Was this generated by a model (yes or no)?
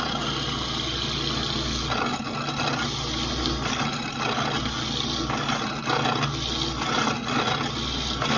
no